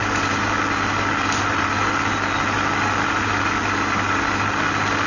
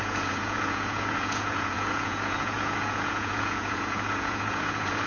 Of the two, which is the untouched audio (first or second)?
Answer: first